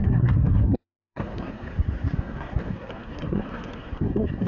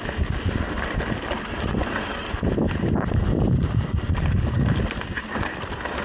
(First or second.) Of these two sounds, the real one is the second